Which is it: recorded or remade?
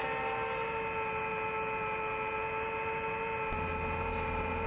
recorded